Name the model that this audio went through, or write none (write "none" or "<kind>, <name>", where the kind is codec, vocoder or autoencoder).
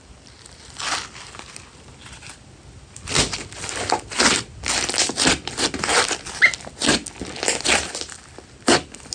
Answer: none